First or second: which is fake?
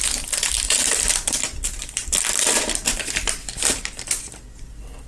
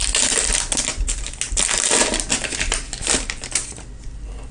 first